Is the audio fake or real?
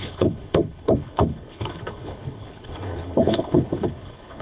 fake